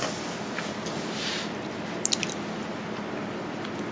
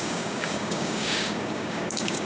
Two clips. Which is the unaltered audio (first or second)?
first